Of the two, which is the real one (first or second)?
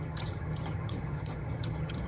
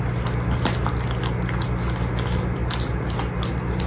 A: second